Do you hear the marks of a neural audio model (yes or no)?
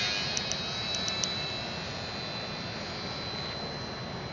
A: no